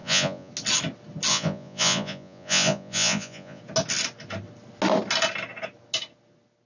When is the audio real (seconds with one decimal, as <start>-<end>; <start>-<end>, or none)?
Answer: 0.5-1.3; 3.6-6.7